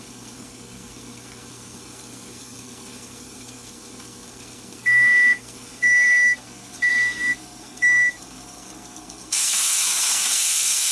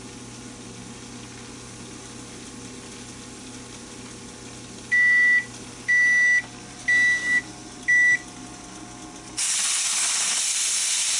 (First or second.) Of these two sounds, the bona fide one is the second